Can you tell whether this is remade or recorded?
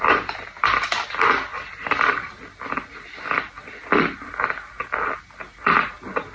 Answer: recorded